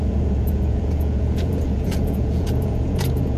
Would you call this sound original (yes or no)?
no